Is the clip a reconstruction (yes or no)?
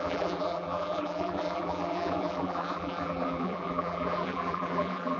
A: yes